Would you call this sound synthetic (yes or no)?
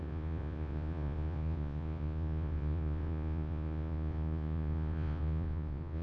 yes